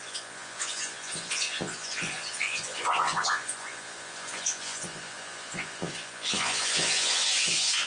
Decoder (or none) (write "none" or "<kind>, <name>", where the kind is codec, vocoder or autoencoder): vocoder, Vocos